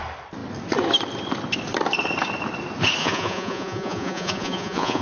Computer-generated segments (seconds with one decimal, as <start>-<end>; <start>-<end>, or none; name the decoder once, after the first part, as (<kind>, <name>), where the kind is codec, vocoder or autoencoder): 3.0-5.0 (vocoder, Vocos)